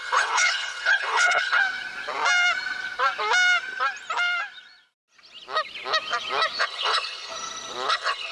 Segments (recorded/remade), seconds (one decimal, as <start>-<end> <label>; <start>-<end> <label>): 0.0-1.6 remade; 1.6-6.6 recorded; 6.6-7.3 remade; 7.3-7.9 recorded; 7.9-8.3 remade

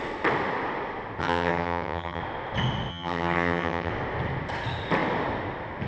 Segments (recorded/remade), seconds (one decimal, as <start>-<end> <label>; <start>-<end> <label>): 0.0-1.2 recorded; 1.2-2.2 remade; 2.2-2.9 recorded; 2.9-3.9 remade; 3.9-5.9 recorded

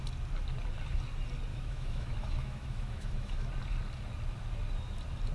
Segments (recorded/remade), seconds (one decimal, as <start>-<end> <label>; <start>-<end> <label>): 0.0-1.5 recorded; 1.5-3.5 remade; 3.5-5.3 recorded

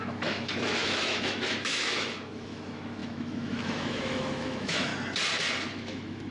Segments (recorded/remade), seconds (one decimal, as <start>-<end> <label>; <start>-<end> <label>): 0.0-4.9 remade; 4.9-5.7 recorded; 5.7-6.3 remade

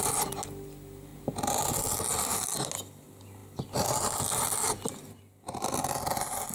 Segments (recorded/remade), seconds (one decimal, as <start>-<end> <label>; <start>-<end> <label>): 0.0-6.5 recorded

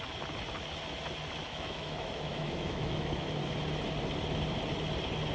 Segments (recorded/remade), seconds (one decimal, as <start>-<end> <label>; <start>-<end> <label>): 0.0-1.4 recorded; 1.4-3.4 remade; 3.4-5.3 recorded

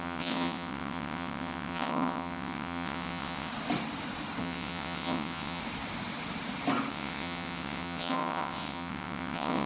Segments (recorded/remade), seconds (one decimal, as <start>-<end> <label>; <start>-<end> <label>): 0.0-3.5 remade; 3.5-4.4 recorded; 4.4-5.6 remade; 5.6-6.9 recorded; 6.9-9.7 remade

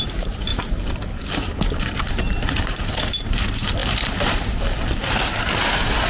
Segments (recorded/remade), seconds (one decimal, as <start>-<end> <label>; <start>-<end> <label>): 0.0-0.5 remade; 0.5-2.1 recorded; 2.1-3.8 remade; 3.8-5.5 recorded; 5.5-6.1 remade